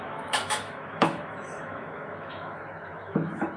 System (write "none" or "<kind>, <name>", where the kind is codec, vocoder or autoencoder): autoencoder, DAC-VAE